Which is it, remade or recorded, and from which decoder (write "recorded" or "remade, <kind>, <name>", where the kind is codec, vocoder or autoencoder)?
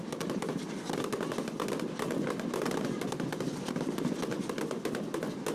recorded